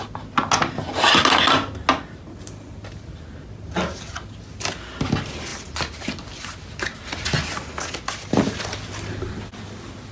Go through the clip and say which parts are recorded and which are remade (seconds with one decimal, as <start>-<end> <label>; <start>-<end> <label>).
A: 0.0-10.1 recorded